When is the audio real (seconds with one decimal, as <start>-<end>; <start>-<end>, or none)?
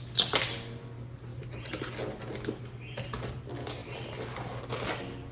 0.0-5.3